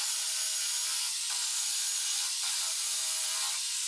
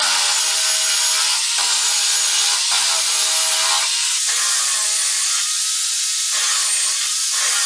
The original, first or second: second